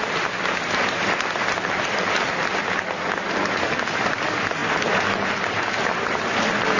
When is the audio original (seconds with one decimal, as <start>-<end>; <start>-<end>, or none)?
0.0-6.8